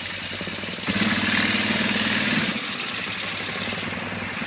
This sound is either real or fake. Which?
real